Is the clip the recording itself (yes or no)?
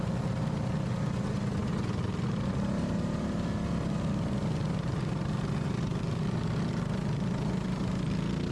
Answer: yes